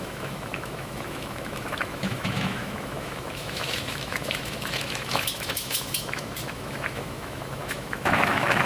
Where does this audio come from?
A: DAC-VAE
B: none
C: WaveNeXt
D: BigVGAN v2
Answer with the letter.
A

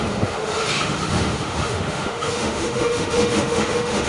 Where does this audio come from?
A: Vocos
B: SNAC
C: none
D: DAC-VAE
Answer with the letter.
D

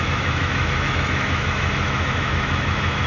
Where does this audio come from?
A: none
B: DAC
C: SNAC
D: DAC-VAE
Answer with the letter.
D